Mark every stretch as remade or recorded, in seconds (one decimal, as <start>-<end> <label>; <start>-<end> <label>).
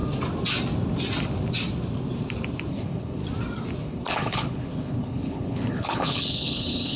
0.0-2.7 recorded; 2.7-3.2 remade; 3.2-3.8 recorded; 3.8-7.0 remade